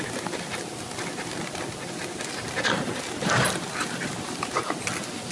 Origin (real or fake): real